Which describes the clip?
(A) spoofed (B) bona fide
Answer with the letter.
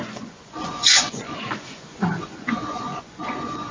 A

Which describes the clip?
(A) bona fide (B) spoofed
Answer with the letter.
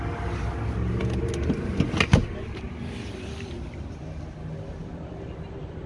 A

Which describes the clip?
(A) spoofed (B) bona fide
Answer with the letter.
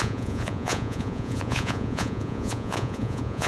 A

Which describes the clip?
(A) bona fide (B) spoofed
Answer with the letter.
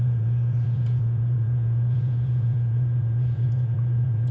B